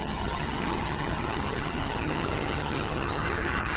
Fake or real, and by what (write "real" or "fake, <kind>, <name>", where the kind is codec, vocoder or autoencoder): fake, vocoder, HiFi-GAN